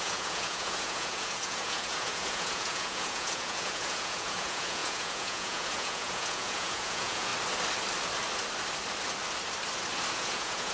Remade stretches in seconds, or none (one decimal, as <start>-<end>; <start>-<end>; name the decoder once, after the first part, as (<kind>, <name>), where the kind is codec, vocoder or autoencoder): 0.0-7.3 (vocoder, Vocos); 10.1-10.7